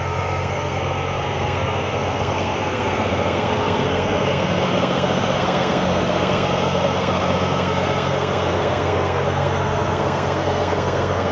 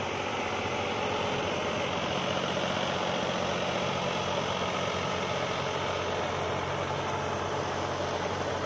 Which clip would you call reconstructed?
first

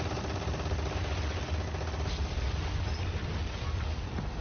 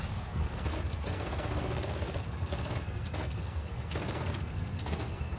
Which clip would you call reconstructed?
second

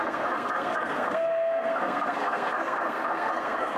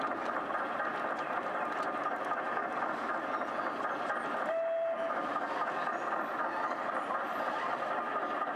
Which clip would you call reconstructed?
first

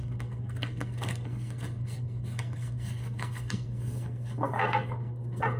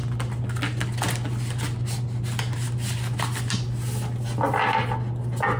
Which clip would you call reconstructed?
first